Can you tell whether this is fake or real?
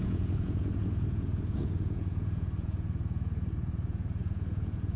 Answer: fake